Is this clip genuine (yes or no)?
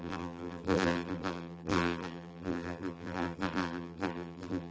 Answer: no